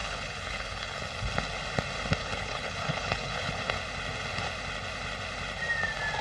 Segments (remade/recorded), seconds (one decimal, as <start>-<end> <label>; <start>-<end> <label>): 0.0-1.0 remade; 1.0-2.2 recorded; 2.2-3.6 remade; 3.6-6.2 recorded